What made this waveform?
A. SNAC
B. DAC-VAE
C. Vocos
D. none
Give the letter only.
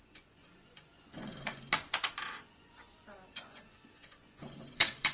C